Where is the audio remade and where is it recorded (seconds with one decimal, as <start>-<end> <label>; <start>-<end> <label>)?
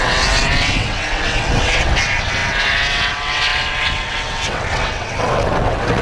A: 0.0-6.0 remade